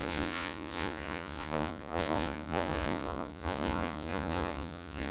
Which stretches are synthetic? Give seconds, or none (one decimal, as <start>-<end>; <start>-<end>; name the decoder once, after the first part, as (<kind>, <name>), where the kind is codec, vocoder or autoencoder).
0.0-5.1 (vocoder, Vocos)